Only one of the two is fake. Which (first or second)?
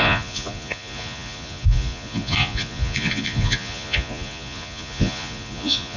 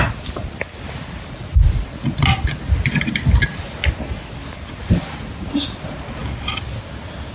first